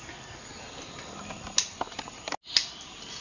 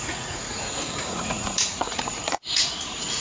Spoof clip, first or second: second